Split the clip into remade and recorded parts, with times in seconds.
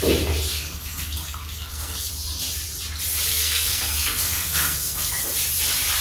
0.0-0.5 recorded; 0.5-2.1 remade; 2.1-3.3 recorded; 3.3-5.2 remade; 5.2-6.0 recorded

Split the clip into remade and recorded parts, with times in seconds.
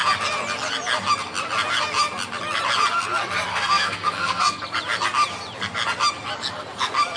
0.0-3.5 recorded; 3.5-4.6 remade; 4.6-7.2 recorded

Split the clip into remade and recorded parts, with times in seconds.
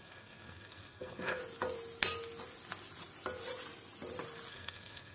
0.0-1.4 remade; 1.4-4.5 recorded; 4.5-5.1 remade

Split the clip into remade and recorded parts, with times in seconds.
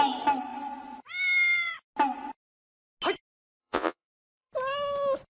0.0-3.6 recorded; 3.6-4.5 remade; 4.5-5.4 recorded